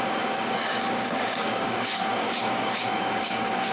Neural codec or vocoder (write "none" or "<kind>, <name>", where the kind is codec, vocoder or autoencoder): codec, DAC